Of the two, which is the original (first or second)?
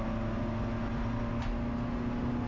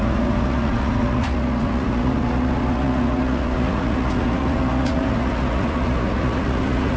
first